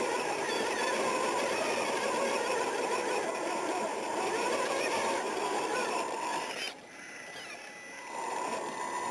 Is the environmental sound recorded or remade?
remade